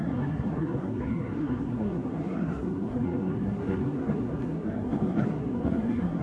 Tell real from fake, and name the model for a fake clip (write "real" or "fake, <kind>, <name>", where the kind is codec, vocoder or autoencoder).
fake, codec, SNAC